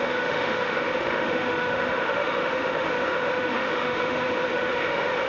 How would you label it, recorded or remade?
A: remade